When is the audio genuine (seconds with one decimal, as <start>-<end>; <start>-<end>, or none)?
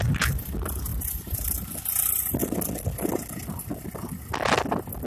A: 0.0-0.9; 1.8-5.1